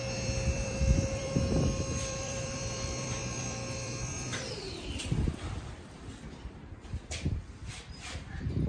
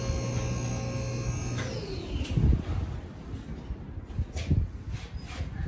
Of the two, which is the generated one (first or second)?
first